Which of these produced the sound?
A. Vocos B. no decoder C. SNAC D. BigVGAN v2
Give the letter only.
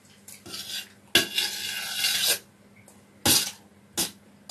B